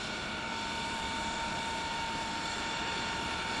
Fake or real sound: fake